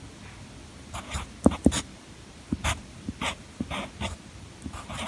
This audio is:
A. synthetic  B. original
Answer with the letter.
B